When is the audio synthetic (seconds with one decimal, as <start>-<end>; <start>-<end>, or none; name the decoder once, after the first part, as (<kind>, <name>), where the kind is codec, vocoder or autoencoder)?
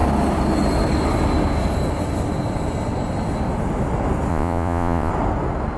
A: 4.3-5.1 (vocoder, Vocos)